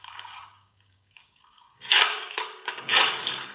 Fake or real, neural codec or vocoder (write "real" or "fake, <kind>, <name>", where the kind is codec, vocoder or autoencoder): fake, codec, DAC